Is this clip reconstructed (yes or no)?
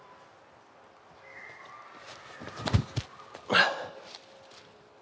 no